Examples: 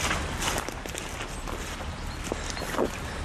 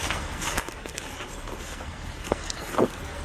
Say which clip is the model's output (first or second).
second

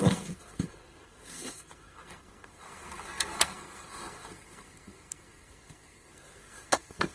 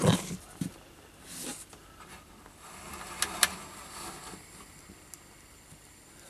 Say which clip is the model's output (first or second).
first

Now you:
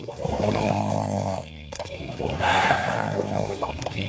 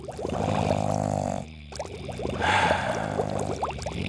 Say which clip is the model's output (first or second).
first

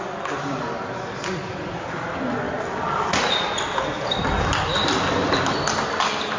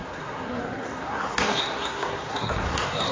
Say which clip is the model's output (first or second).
second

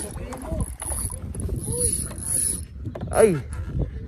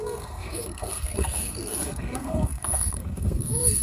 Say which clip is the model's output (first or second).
second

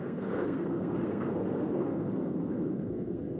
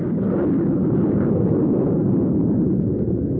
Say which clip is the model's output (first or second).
first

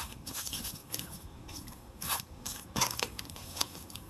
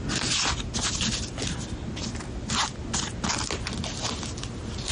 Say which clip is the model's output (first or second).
first